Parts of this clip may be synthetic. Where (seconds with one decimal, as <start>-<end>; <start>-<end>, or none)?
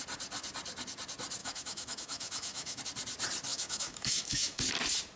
1.4-2.8; 3.5-4.6